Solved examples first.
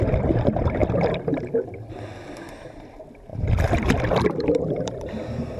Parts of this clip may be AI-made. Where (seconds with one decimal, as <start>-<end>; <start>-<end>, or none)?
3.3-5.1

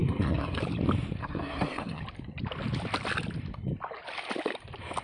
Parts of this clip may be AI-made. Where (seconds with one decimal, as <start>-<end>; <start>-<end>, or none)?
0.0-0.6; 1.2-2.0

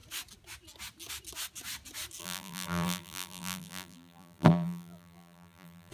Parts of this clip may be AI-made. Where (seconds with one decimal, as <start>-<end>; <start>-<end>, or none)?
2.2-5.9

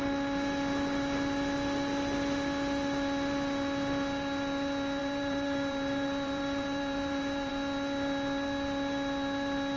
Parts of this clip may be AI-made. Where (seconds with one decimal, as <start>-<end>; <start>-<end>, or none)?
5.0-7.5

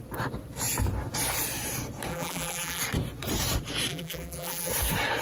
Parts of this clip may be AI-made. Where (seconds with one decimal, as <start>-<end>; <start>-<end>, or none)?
2.1-2.8; 3.9-4.7